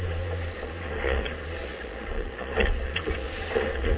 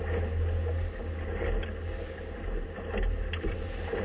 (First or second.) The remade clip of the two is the first